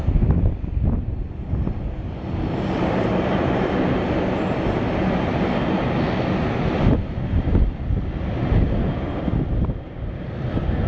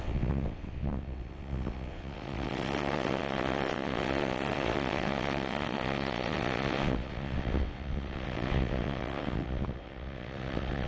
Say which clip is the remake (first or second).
second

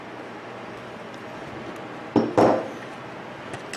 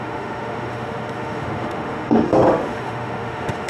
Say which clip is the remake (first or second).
second